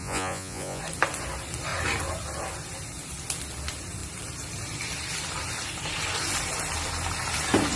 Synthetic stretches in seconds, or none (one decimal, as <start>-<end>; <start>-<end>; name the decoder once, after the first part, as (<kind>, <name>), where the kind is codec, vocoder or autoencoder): 0.0-0.8 (vocoder, Vocos)